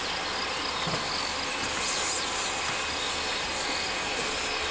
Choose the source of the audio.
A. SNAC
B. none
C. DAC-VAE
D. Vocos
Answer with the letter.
B